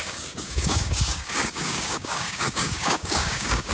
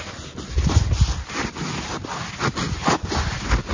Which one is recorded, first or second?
second